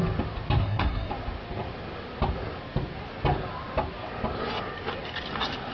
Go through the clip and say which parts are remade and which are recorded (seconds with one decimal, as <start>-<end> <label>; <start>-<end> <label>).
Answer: 0.0-0.6 recorded; 0.6-1.1 remade; 1.1-5.7 recorded